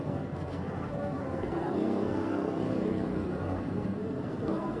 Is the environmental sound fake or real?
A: fake